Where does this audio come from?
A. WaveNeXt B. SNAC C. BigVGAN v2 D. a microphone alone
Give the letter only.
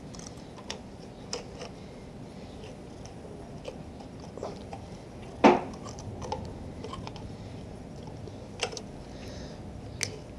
D